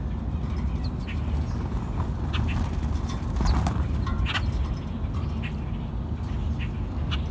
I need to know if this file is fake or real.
real